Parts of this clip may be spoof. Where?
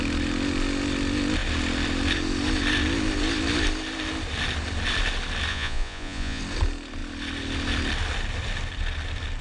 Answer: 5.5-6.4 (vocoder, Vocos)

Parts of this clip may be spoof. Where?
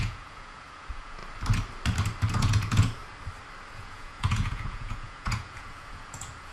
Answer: 0.0-1.2 (vocoder, Vocos); 2.4-3.0; 3.7-6.5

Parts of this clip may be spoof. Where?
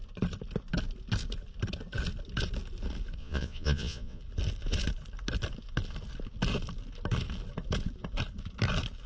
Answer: 3.2-4.2 (vocoder, Vocos)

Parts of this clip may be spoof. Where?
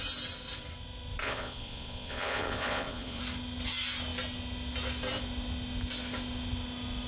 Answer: 1.2-3.2 (vocoder, Vocos)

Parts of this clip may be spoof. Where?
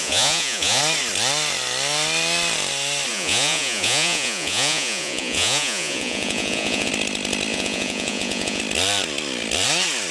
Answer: 0.0-0.8 (vocoder, Vocos); 3.1-6.9; 7.5-8.6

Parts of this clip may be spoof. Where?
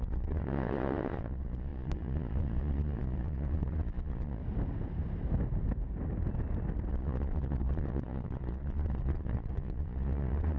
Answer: 0.0-4.4 (vocoder, Vocos); 6.9-10.6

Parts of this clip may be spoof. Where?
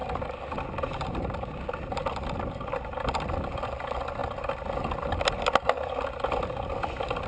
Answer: none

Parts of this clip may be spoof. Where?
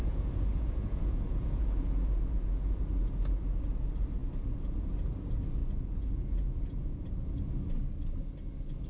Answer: 0.0-2.8 (vocoder, Vocos); 5.6-7.5